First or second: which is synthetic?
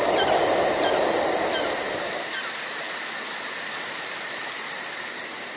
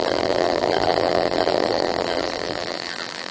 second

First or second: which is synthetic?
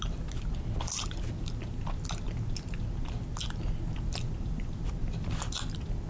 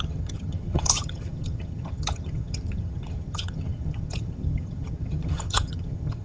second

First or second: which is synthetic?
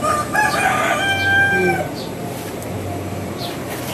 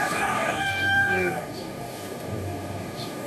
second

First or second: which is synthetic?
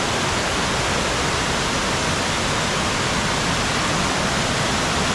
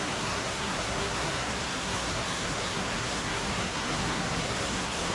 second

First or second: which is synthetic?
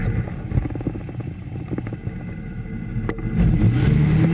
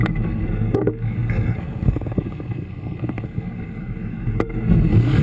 second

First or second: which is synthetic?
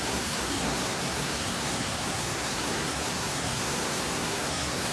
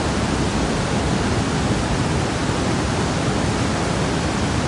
first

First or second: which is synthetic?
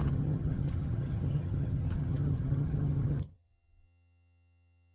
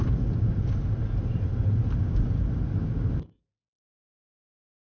first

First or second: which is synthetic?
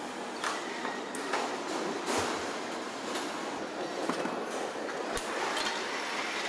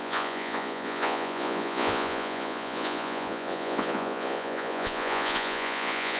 second